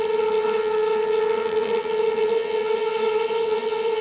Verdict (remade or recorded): remade